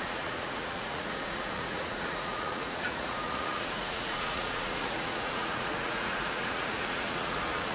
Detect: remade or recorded remade